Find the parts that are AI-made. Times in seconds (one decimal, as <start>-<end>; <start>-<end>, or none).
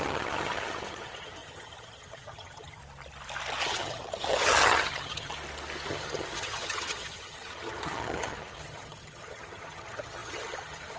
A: 0.0-2.8; 3.6-5.3; 5.9-11.0